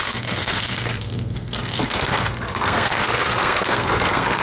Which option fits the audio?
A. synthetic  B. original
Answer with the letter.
A